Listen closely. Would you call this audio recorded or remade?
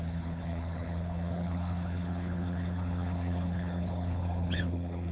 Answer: remade